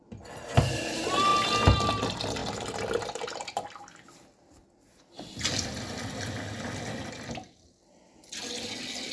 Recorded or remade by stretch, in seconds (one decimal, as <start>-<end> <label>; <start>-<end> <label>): 0.0-9.1 recorded